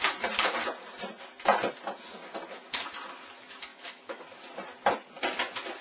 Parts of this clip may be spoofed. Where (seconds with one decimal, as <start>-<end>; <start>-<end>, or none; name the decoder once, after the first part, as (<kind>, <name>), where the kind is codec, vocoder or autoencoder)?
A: 3.7-4.2 (autoencoder, DAC-VAE)